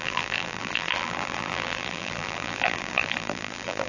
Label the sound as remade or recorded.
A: remade